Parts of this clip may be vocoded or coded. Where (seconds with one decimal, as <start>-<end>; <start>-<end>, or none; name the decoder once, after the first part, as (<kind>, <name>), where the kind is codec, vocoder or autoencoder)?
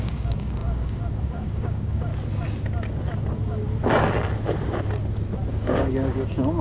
0.0-2.1 (codec, DAC); 5.5-6.6